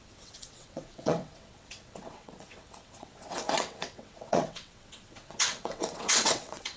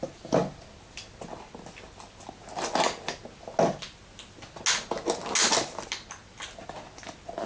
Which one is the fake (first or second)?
first